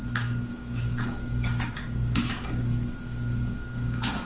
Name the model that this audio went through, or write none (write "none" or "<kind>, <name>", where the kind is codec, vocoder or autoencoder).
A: codec, DAC